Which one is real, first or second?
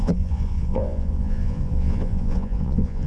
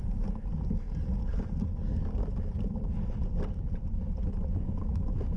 second